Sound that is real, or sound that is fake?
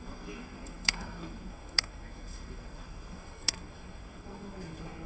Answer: fake